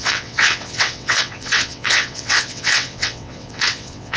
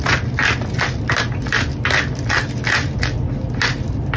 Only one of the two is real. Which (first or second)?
second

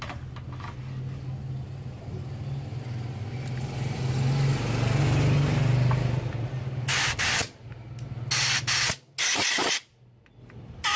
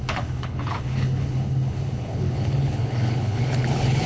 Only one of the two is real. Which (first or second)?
first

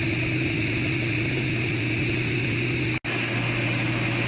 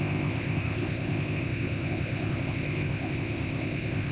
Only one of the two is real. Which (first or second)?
first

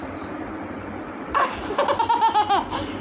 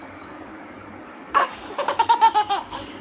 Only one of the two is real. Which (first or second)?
first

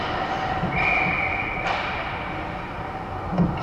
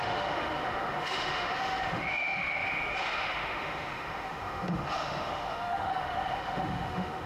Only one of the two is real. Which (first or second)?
first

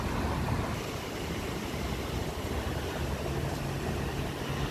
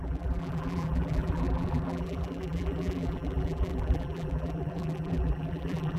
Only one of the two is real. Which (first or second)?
first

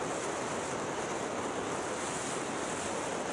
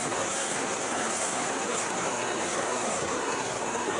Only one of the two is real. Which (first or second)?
first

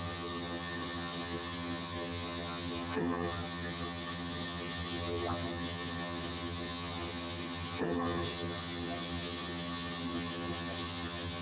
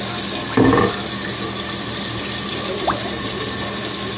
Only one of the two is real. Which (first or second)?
second